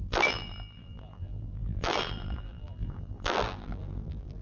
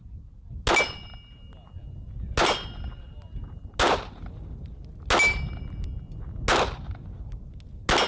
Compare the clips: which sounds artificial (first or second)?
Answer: first